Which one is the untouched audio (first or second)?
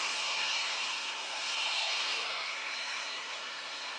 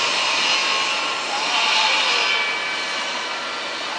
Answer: second